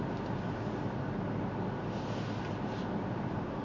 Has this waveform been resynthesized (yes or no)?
no